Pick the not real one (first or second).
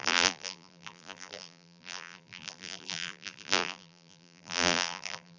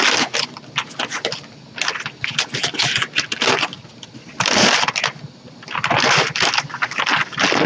first